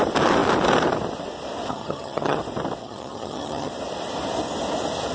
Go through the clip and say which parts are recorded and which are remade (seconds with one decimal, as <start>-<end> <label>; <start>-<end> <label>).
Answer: 0.0-1.7 recorded; 1.7-2.4 remade; 2.4-2.8 recorded; 2.8-3.7 remade; 3.7-5.1 recorded